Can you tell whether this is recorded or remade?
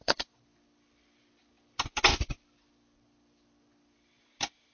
recorded